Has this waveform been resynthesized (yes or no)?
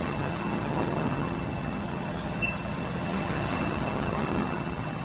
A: yes